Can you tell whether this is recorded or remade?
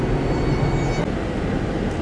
recorded